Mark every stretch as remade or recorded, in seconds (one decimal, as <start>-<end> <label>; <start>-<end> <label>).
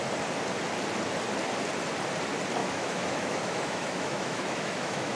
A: 0.0-2.6 recorded; 2.6-5.2 remade